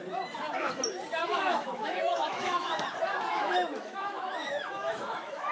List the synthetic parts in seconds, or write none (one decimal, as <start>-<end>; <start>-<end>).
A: 1.2-2.8; 3.3-5.5

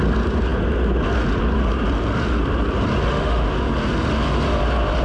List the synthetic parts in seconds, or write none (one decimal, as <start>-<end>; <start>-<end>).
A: 3.1-3.6

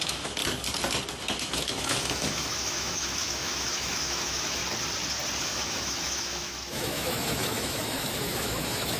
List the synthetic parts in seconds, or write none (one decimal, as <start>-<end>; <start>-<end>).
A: 0.0-0.4; 1.2-4.6; 5.4-9.0

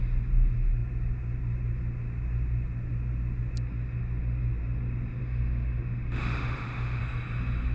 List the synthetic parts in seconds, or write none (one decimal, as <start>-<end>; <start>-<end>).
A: 5.2-7.0

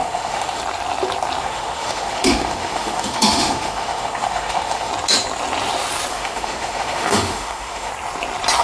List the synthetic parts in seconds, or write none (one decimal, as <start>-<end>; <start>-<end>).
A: 0.0-0.6; 1.4-4.9; 6.1-7.9

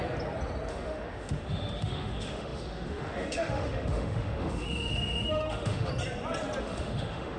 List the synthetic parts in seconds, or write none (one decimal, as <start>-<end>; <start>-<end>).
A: 0.7-5.9; 6.6-7.4